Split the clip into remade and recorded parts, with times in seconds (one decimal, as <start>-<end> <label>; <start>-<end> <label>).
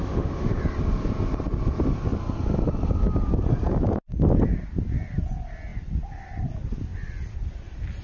0.0-0.6 remade; 0.6-8.0 recorded